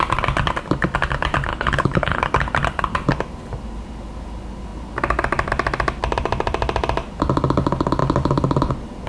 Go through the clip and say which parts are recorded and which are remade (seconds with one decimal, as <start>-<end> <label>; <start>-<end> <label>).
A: 0.0-1.5 recorded; 1.5-2.2 remade; 2.2-9.1 recorded